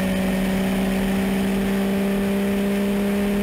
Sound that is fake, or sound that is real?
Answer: real